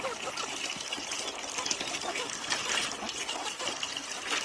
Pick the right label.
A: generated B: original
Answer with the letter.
B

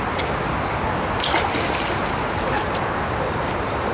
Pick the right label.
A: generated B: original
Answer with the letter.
B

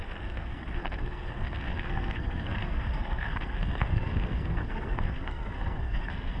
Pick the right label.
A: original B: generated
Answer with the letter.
B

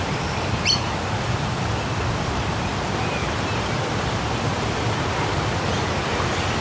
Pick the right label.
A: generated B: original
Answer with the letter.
A